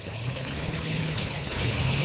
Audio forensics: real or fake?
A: fake